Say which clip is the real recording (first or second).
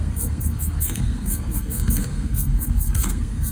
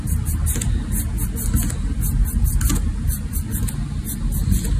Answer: second